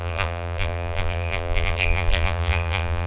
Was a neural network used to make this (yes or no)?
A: yes